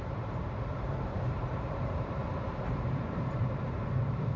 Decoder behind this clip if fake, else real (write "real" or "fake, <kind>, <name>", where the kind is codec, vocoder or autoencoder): fake, vocoder, BigVGAN v2